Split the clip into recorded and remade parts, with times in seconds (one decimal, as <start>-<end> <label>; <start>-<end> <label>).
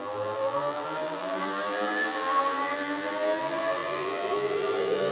0.0-5.1 remade